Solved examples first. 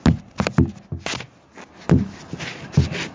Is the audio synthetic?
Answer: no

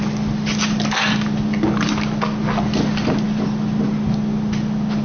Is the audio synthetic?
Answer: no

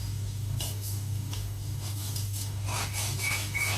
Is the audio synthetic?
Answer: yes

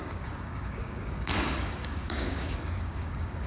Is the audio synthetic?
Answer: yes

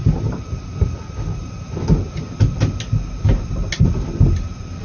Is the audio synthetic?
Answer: no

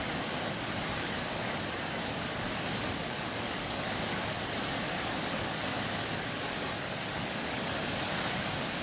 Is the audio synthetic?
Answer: yes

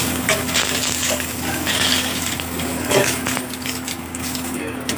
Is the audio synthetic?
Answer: yes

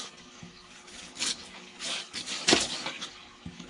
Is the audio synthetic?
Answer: yes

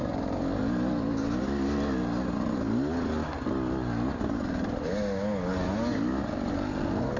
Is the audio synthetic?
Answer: no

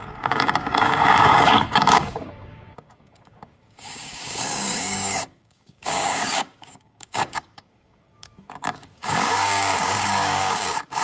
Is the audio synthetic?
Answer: yes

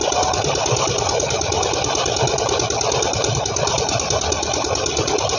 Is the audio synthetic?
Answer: no